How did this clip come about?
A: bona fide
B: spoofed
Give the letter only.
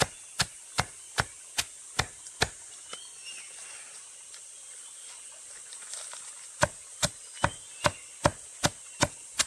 A